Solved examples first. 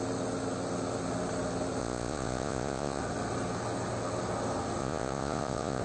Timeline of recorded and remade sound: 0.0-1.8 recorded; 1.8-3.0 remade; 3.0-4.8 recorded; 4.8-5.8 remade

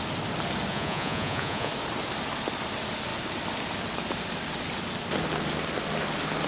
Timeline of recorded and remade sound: 0.0-0.7 recorded; 0.7-1.7 remade; 1.7-6.5 recorded

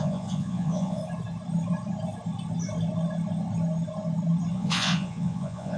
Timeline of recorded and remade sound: 0.0-1.0 remade; 1.0-4.5 recorded; 4.5-5.8 remade

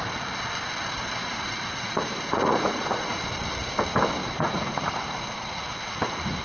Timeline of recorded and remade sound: 0.0-1.2 recorded; 1.2-3.2 remade; 3.2-4.2 recorded; 4.2-6.4 remade

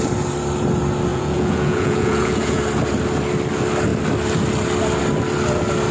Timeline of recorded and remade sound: 0.0-1.1 recorded; 1.1-2.6 remade; 2.6-5.9 recorded

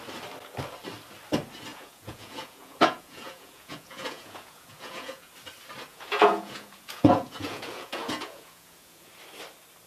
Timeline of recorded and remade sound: 0.0-1.7 recorded; 1.7-5.3 remade; 5.3-5.9 recorded; 5.9-9.1 remade; 9.1-9.9 recorded

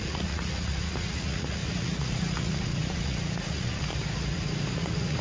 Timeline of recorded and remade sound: 0.0-3.9 remade; 3.9-4.7 recorded; 4.7-5.2 remade

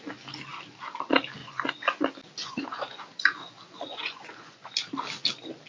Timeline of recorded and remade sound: 0.0-1.4 recorded; 1.4-2.0 remade; 2.0-2.4 recorded; 2.4-3.0 remade; 3.0-3.9 recorded; 3.9-4.7 remade; 4.7-5.7 recorded